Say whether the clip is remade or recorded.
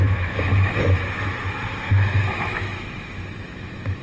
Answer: remade